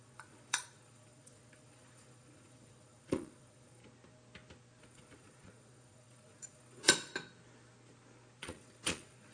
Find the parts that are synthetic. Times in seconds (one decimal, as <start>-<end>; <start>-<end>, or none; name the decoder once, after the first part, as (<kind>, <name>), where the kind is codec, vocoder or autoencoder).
0.0-3.8 (vocoder, Vocos); 4.8-7.1; 8.4-9.3